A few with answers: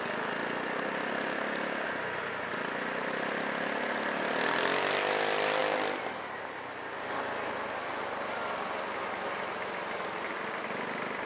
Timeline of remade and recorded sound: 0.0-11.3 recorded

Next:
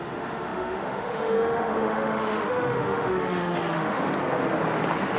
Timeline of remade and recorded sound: 0.0-4.1 remade; 4.1-5.2 recorded

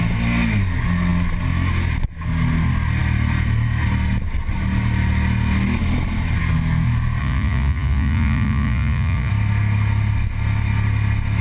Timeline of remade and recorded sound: 0.0-7.2 recorded; 7.2-9.3 remade; 9.3-11.4 recorded

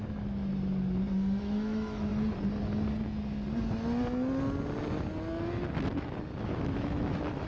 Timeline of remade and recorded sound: 0.0-0.5 remade; 0.5-1.4 recorded; 1.4-2.1 remade; 2.1-6.4 recorded; 6.4-7.5 remade